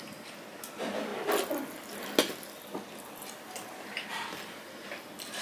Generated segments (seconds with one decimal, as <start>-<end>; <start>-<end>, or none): none